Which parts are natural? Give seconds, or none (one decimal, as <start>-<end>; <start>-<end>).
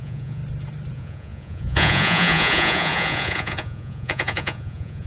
0.4-0.9